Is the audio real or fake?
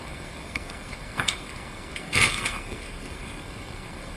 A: fake